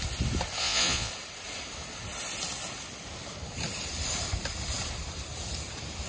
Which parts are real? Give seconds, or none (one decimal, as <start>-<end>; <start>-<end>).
0.0-0.6; 1.1-6.1